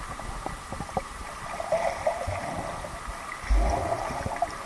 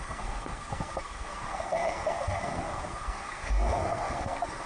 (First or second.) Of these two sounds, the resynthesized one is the second